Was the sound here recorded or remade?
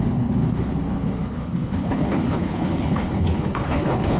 remade